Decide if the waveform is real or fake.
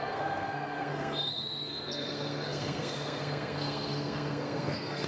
fake